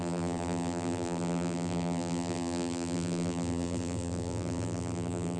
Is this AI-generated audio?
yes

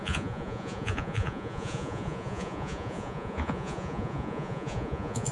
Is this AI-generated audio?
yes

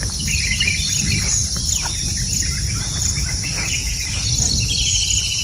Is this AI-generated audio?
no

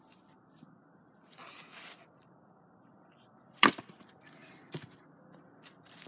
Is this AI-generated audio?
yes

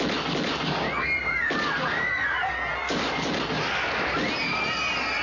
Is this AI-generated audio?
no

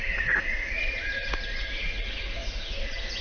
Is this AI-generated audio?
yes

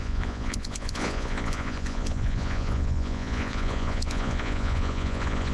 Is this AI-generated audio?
yes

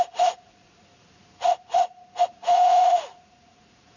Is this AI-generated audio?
yes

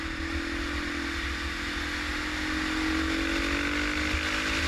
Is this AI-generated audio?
no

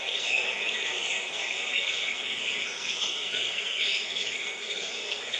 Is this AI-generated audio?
yes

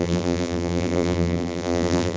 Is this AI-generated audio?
yes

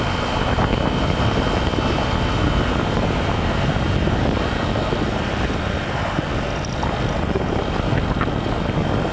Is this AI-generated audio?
no